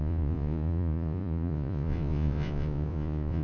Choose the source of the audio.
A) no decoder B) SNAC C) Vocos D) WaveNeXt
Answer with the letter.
C